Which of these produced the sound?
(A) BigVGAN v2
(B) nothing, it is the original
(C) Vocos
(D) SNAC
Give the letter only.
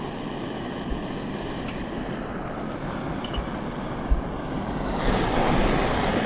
B